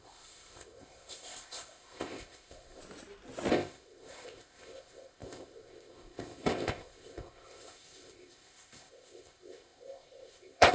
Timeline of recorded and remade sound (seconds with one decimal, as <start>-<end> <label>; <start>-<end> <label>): 0.0-2.8 remade; 2.8-3.5 recorded; 3.5-10.7 remade